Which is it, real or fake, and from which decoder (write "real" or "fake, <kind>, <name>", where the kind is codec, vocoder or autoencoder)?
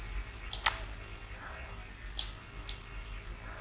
real